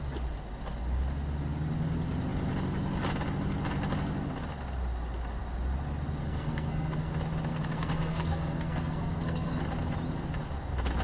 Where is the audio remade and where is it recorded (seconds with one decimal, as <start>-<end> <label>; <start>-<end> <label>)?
0.0-6.2 recorded; 6.2-7.1 remade; 7.1-7.5 recorded; 7.5-9.6 remade; 9.6-11.0 recorded